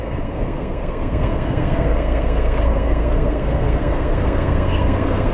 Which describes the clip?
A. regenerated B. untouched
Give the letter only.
A